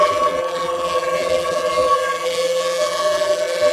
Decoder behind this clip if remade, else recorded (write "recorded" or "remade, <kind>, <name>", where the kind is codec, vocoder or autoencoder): remade, vocoder, BigVGAN v2